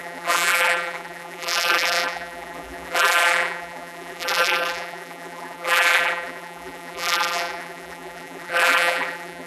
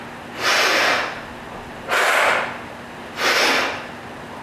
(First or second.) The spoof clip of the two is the first